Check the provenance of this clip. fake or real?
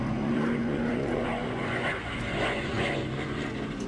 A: fake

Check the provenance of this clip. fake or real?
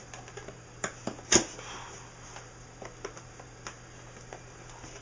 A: real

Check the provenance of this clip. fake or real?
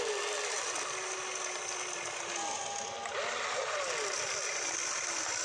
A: real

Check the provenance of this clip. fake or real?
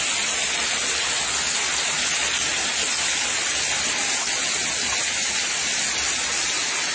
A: real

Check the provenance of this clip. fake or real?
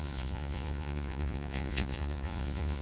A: fake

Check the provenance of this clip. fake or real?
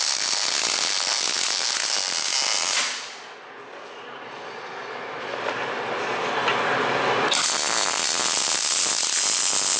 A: real